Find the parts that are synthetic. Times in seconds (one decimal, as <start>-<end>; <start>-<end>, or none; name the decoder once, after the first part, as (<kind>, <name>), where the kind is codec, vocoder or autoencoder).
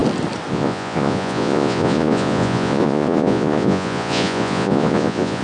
0.5-5.4 (vocoder, Vocos)